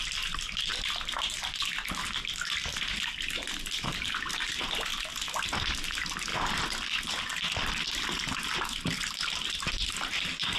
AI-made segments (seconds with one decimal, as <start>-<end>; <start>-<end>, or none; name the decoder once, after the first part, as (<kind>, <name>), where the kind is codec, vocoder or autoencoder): none